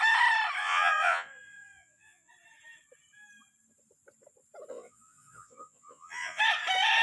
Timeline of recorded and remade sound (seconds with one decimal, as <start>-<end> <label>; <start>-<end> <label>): 0.0-0.6 recorded; 0.6-2.3 remade; 2.3-4.7 recorded; 4.7-6.4 remade; 6.4-7.0 recorded